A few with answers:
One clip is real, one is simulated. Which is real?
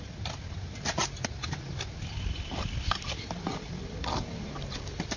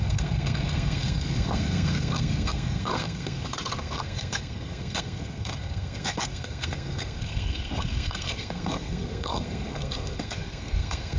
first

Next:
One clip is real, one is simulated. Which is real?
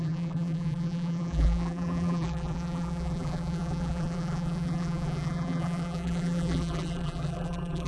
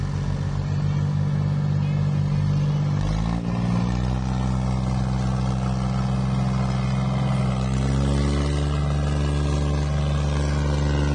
second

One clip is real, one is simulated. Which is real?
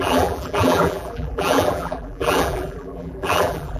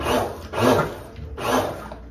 second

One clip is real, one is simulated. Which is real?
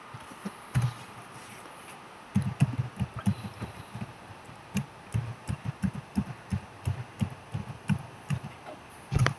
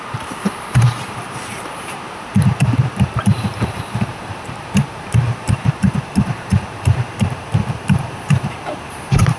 first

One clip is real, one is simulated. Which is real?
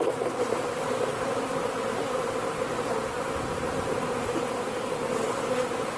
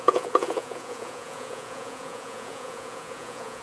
first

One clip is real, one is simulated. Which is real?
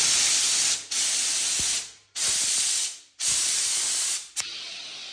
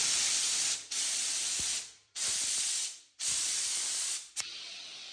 first